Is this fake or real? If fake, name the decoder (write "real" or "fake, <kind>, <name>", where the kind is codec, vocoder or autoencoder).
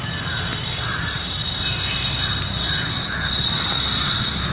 real